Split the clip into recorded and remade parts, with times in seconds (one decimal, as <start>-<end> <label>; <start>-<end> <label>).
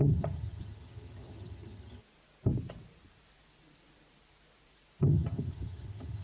0.0-2.0 remade; 2.0-5.0 recorded; 5.0-6.2 remade